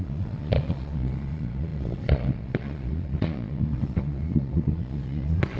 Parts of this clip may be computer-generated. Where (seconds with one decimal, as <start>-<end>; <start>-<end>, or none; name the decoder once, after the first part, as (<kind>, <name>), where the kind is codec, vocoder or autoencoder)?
0.0-5.6 (vocoder, Vocos)